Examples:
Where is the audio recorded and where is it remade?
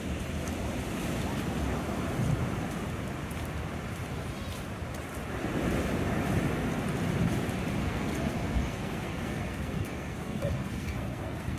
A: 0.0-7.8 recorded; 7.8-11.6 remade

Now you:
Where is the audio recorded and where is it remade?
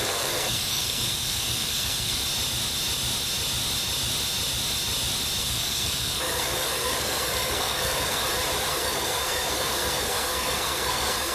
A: 0.0-2.2 remade; 2.2-5.4 recorded; 5.4-8.2 remade; 8.2-8.7 recorded; 8.7-11.3 remade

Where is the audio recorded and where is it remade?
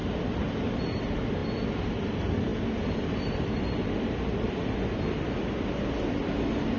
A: 0.0-6.8 recorded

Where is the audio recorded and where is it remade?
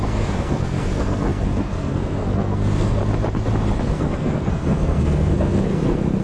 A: 0.0-3.0 remade; 3.0-3.8 recorded; 3.8-6.2 remade